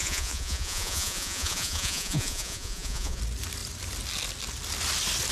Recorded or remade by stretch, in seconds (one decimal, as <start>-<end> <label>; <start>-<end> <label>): 0.0-3.2 remade; 3.2-5.3 recorded